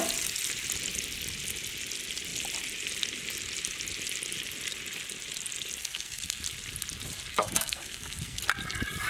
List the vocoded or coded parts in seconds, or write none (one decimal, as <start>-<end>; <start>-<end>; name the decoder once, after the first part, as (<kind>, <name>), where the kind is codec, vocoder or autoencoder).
5.8-6.4 (codec, SNAC); 7.3-8.4

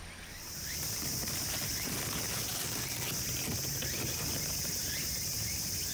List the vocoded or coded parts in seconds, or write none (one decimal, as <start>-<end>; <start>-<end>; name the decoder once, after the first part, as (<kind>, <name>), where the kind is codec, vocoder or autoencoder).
none

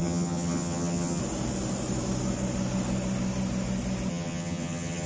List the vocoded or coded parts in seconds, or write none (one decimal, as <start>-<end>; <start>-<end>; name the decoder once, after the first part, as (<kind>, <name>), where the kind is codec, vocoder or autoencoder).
0.0-1.2 (vocoder, HiFi-GAN); 4.1-5.1

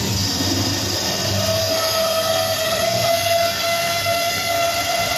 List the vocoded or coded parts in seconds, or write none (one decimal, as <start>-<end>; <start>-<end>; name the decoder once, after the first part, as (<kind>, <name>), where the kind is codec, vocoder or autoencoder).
1.6-4.7 (codec, SNAC)

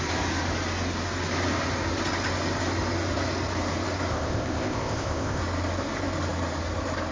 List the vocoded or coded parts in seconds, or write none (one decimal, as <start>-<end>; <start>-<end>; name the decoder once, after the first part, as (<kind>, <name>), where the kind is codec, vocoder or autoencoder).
4.1-5.4 (codec, ZipCodec)

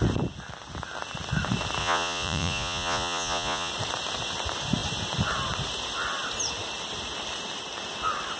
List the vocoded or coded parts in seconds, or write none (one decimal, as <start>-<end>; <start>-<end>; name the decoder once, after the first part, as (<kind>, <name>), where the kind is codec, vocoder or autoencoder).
1.8-3.7 (vocoder, Vocos)

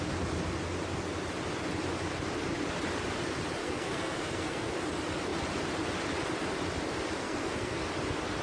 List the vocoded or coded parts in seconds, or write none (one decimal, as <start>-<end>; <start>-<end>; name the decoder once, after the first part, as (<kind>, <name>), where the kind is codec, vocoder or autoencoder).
3.6-4.7 (codec, SNAC); 7.2-7.8